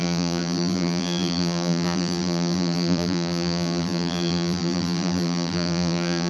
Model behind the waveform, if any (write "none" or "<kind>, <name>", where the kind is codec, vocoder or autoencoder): vocoder, BigVGAN v2